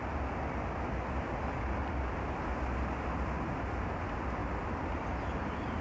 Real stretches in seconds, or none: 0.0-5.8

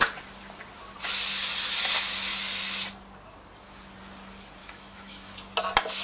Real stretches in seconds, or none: 0.0-4.6; 5.3-6.0

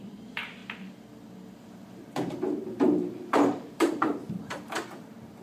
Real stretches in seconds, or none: 0.6-1.5